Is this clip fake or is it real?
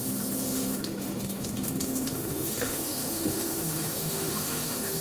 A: fake